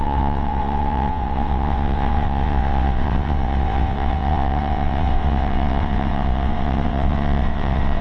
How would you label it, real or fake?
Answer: fake